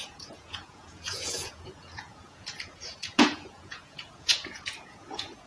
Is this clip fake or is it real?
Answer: fake